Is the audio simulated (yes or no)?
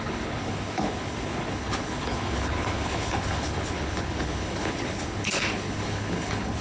yes